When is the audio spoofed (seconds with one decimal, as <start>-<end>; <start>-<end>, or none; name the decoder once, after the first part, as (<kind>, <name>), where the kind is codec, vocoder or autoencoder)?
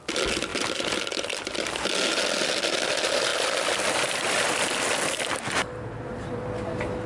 0.5-2.9 (vocoder, BigVGAN v2); 3.3-4.7